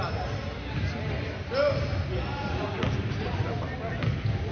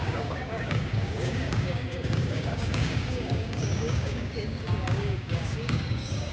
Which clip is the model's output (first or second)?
second